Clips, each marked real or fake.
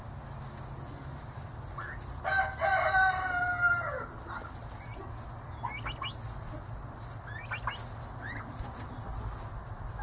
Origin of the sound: real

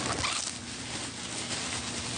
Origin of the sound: real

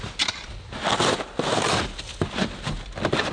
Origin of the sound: real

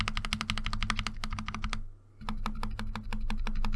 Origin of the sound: real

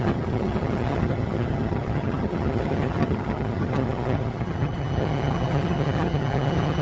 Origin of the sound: fake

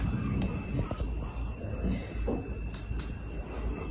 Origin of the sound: real